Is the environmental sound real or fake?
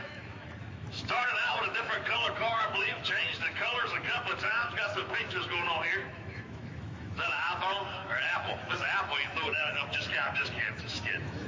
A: fake